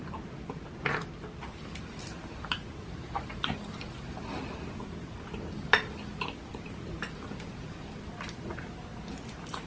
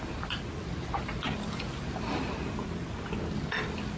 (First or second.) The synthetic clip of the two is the first